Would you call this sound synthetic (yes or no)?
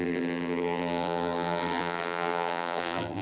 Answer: yes